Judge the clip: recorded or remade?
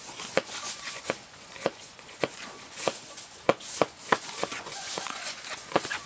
remade